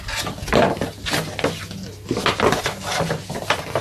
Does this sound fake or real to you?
real